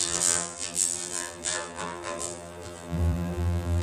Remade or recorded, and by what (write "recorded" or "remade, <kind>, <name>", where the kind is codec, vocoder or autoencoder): remade, vocoder, BigVGAN v2